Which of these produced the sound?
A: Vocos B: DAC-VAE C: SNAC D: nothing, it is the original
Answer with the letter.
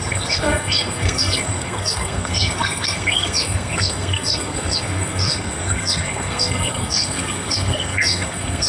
C